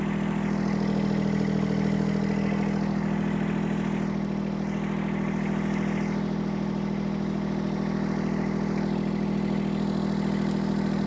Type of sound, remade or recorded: recorded